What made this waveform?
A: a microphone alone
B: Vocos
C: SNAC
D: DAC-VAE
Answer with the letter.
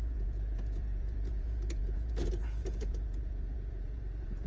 B